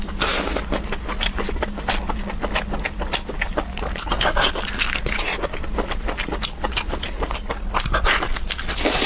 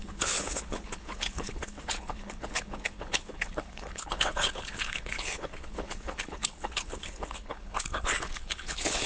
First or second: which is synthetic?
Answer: second